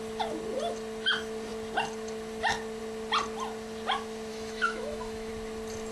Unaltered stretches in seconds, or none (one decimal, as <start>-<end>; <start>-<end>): 0.0-4.3; 5.3-5.9